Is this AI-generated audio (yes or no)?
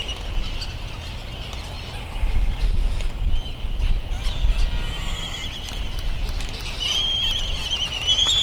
no